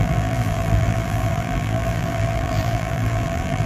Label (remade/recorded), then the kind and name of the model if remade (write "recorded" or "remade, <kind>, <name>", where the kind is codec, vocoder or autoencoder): remade, vocoder, BigVGAN v2